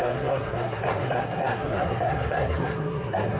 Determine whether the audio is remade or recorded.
remade